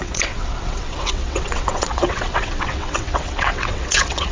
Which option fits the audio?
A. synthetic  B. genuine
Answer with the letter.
A